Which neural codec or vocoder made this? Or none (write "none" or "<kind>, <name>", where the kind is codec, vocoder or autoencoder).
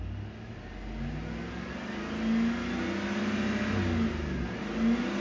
none